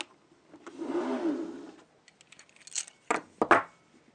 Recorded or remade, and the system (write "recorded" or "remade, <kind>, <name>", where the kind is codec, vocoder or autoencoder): recorded